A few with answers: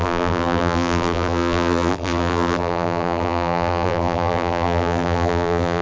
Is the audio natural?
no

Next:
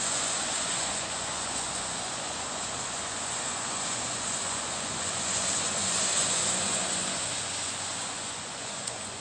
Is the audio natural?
no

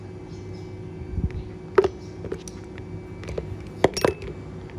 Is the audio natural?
yes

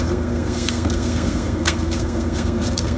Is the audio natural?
no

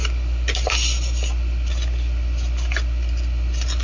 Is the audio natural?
yes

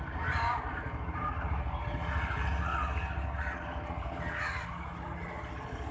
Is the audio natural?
yes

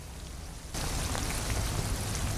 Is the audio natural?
yes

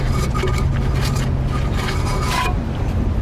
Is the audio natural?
yes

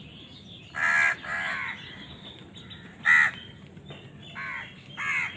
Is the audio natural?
yes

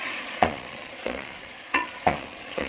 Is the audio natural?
no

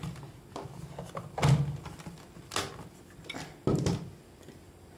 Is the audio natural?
yes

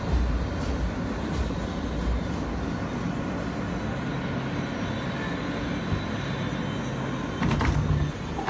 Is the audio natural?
yes